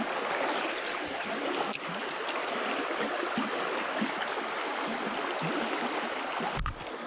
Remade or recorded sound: recorded